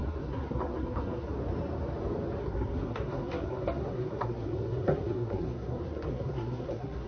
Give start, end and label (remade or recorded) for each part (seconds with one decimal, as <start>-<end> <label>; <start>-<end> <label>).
0.0-1.3 remade; 1.3-2.4 recorded; 2.4-7.1 remade